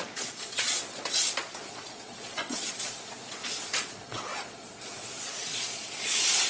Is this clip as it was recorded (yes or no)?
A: no